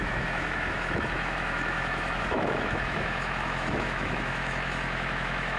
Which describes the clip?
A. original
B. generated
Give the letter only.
B